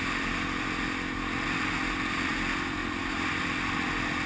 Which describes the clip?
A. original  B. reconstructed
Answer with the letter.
A